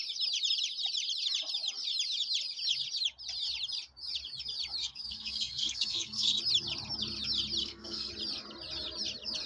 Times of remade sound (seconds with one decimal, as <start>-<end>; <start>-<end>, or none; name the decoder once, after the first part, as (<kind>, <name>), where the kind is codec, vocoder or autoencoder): 4.8-6.4 (codec, SNAC); 7.6-8.1

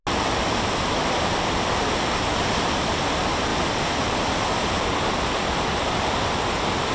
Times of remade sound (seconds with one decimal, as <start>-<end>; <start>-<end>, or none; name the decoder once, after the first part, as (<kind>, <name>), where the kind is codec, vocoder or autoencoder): 2.7-3.5 (vocoder, BigVGAN v2); 6.1-6.9

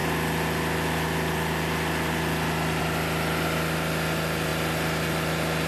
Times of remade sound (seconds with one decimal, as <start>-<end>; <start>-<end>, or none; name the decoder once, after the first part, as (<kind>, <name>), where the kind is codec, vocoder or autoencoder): none

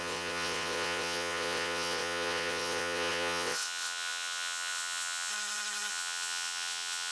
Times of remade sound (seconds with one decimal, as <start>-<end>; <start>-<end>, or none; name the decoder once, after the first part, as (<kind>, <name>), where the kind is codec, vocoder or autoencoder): 0.0-5.3 (vocoder, WaveNeXt); 5.9-7.1

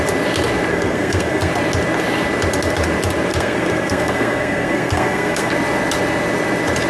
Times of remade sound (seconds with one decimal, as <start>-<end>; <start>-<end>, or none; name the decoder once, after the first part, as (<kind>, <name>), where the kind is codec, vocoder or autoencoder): 0.7-1.5 (codec, SNAC); 3.3-5.5

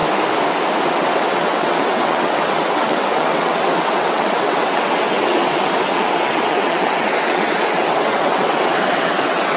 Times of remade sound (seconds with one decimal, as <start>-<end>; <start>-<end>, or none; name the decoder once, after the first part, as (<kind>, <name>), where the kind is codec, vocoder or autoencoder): 0.8-9.6 (vocoder, WaveNeXt)

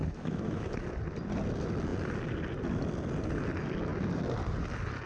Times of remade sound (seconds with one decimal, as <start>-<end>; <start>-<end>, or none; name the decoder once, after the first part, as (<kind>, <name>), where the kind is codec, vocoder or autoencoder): 0.0-0.7 (autoencoder, DAC-VAE)